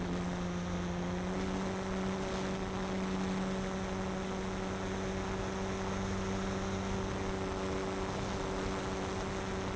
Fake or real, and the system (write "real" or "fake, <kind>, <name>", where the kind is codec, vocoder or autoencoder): real